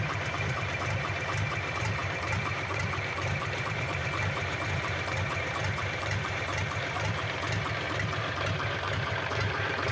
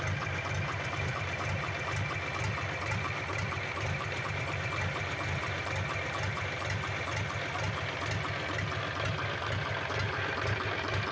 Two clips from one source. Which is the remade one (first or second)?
first